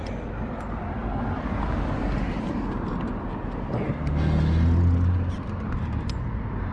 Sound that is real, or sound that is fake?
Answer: real